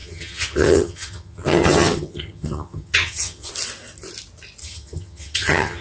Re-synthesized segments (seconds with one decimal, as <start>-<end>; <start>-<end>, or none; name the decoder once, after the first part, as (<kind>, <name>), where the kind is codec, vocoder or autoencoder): 0.0-3.5 (vocoder, HiFi-GAN); 4.6-5.8